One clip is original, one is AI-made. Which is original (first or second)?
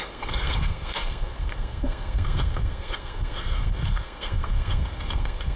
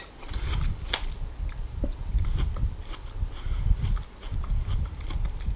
second